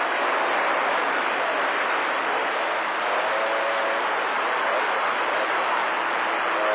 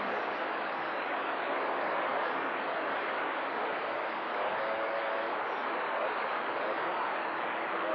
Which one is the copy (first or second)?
second